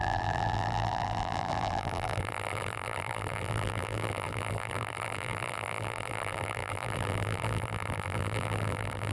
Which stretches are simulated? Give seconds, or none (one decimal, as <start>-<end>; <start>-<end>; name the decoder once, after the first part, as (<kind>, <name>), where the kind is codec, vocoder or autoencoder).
0.0-9.1 (vocoder, BigVGAN v2)